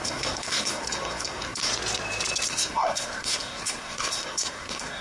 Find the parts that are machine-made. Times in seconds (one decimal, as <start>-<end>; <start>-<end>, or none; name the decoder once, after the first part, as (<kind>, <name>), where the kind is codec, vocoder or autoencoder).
0.0-1.7 (codec, SNAC); 2.5-5.0